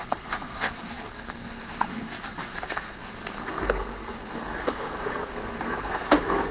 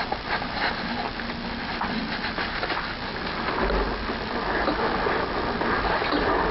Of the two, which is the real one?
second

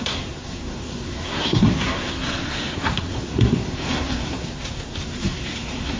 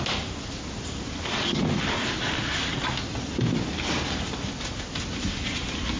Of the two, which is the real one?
second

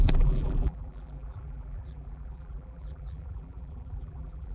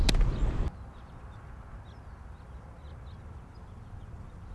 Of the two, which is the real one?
second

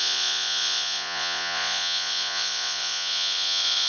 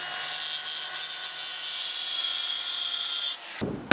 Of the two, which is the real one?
second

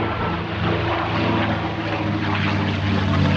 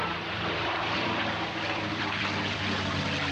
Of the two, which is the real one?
first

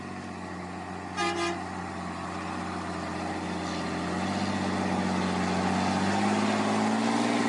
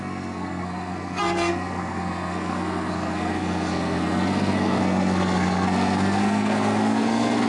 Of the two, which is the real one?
first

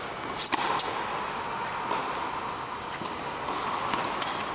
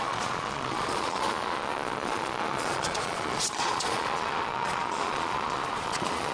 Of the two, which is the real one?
first